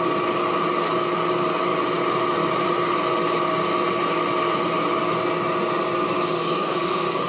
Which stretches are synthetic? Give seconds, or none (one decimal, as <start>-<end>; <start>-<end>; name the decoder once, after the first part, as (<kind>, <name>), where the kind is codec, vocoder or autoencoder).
6.3-7.3 (codec, SNAC)